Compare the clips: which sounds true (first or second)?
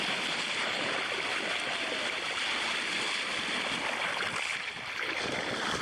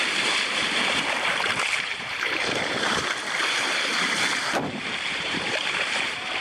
first